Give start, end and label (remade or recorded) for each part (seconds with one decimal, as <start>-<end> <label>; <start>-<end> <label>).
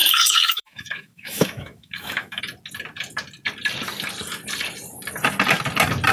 0.0-2.4 remade; 2.4-6.1 recorded